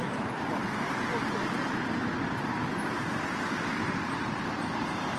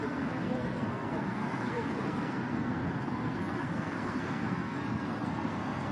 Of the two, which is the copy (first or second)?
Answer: second